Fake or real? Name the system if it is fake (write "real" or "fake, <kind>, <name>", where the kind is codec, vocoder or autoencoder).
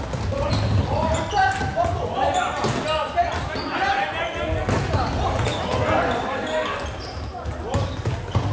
real